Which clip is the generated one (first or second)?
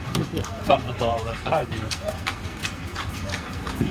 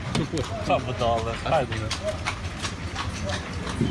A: first